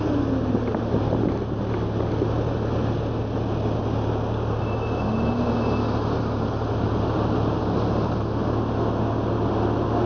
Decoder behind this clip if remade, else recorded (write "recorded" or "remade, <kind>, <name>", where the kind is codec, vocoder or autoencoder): recorded